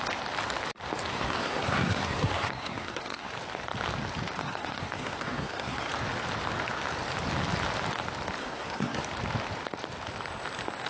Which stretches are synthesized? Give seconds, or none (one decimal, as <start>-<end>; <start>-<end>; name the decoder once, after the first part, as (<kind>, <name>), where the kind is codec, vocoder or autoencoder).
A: 1.1-3.3 (codec, SNAC); 4.4-5.9; 8.4-9.0